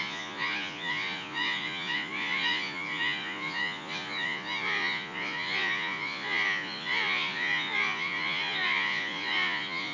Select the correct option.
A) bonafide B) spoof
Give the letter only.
B